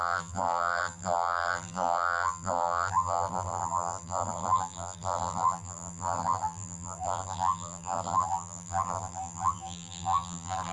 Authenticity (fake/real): fake